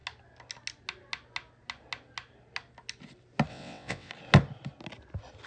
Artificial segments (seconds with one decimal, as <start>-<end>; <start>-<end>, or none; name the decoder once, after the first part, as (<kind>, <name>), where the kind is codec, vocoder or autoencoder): 3.5-4.1 (vocoder, WaveNeXt)